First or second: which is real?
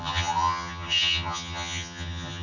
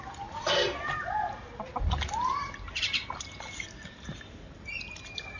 second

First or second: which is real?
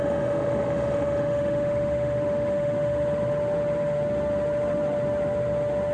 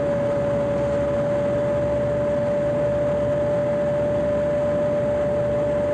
second